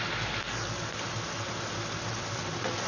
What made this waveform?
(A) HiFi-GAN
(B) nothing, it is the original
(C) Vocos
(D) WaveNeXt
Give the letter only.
B